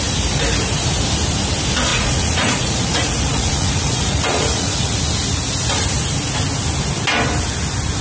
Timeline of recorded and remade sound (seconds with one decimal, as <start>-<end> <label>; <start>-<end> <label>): 0.0-1.9 recorded; 1.9-5.0 remade; 5.0-8.0 recorded